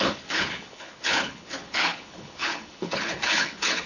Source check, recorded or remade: remade